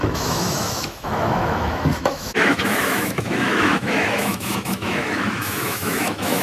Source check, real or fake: fake